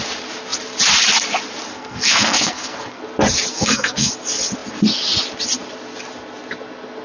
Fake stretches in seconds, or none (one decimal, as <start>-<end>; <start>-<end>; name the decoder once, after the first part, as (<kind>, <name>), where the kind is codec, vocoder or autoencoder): 1.7-3.0 (codec, SNAC); 3.5-4.1